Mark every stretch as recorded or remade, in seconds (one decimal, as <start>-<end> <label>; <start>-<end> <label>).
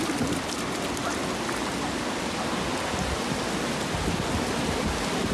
0.0-5.3 recorded